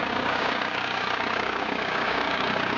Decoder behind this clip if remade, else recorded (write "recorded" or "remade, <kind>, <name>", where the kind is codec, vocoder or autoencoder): remade, codec, DAC